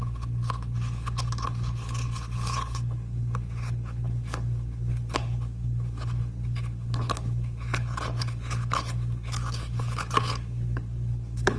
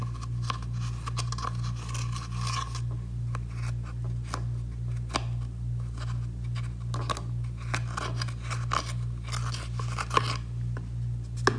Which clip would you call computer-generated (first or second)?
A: first